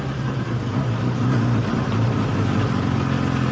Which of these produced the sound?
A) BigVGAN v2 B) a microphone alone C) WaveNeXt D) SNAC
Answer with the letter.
B